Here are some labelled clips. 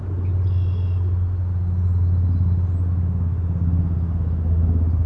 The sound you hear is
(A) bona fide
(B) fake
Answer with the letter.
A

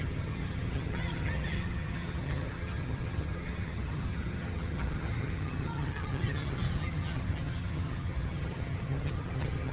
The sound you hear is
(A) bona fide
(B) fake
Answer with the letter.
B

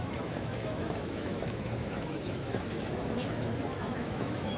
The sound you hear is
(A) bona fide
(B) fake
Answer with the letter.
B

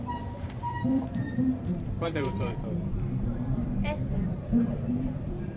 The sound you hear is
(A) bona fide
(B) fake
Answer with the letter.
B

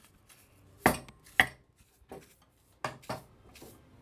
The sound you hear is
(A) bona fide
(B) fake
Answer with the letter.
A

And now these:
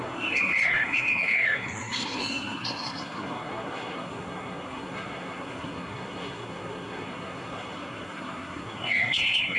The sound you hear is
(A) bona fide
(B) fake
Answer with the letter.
B